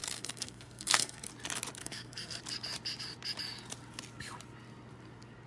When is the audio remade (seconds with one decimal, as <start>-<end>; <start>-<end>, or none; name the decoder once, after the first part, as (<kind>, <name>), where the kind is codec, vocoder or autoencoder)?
0.0-1.3 (codec, SNAC); 1.8-2.4